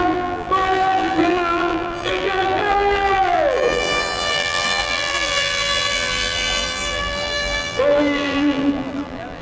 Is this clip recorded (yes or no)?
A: no